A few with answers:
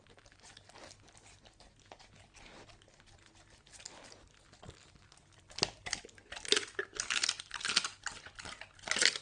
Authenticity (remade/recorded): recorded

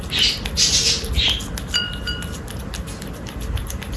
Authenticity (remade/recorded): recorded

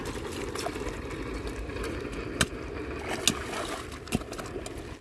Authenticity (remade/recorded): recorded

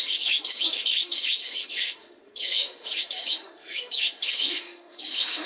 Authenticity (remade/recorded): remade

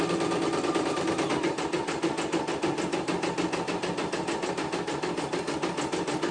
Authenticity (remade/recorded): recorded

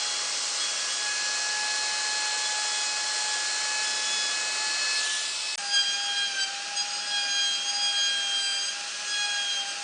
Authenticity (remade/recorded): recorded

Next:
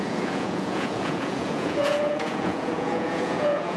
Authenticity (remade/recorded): remade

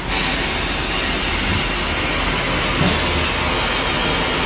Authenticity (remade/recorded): recorded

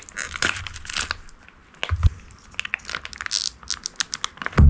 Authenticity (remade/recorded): recorded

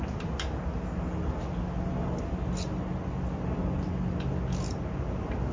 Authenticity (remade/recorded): recorded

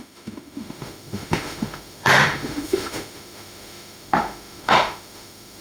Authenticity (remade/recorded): remade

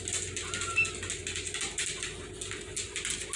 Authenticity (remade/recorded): recorded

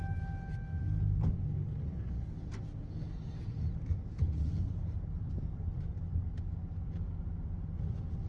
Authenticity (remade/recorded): recorded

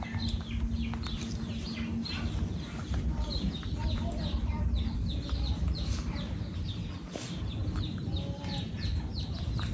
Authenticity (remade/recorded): recorded